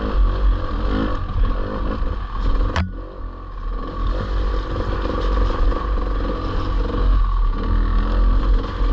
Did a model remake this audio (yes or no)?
no